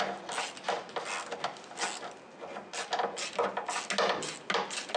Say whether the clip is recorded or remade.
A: recorded